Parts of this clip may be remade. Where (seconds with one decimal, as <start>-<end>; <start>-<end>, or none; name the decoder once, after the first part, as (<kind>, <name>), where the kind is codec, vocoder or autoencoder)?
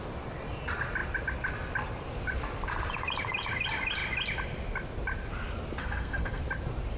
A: 5.8-6.4 (codec, SNAC)